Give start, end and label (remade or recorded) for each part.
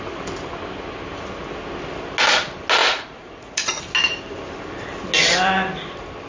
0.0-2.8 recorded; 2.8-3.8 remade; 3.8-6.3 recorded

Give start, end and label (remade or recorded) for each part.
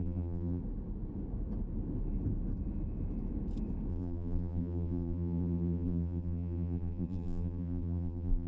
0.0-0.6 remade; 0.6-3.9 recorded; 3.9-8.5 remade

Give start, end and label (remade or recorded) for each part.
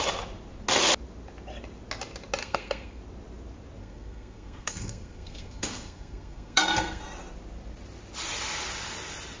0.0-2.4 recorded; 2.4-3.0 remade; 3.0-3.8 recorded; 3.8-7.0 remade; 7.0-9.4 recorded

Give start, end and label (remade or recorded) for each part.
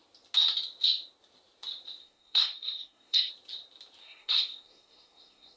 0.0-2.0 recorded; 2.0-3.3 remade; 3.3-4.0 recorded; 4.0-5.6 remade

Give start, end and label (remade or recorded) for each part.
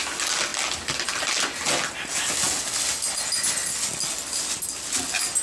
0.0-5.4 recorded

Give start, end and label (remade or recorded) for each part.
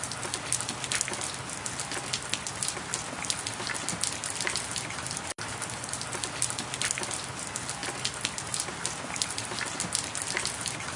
0.0-11.0 recorded